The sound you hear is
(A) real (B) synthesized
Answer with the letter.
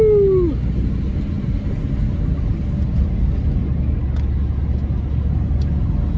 A